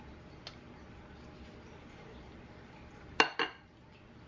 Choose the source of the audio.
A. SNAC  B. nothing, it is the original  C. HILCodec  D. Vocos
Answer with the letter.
B